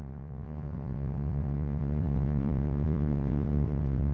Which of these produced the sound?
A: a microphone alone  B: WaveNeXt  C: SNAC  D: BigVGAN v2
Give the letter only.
B